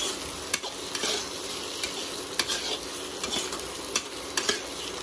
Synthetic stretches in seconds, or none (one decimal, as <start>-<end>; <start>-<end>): none